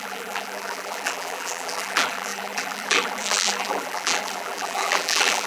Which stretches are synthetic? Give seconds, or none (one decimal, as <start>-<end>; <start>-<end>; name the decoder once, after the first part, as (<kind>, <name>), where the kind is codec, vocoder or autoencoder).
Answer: 0.0-5.5 (vocoder, BigVGAN v2)